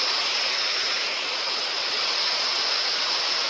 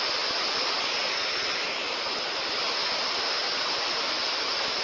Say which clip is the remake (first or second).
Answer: first